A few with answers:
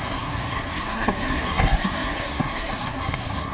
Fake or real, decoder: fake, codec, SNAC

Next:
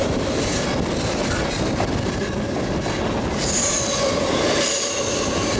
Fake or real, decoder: real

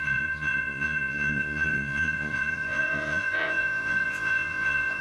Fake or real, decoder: fake, vocoder, Vocos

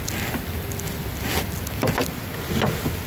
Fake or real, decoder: real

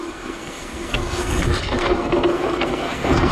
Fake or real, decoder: fake, codec, SNAC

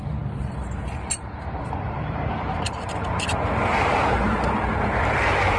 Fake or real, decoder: fake, vocoder, BigVGAN v2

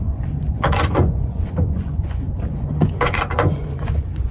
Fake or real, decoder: fake, vocoder, Vocos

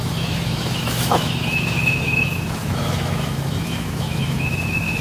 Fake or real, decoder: fake, autoencoder, DAC-VAE